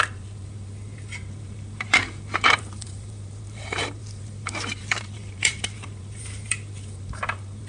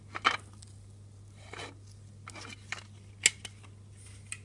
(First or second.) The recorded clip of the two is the second